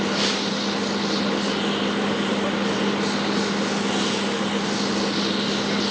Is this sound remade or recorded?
recorded